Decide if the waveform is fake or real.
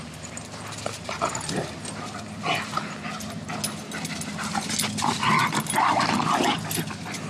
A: real